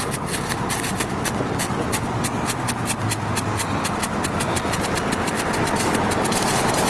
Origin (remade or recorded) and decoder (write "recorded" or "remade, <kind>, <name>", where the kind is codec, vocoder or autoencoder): recorded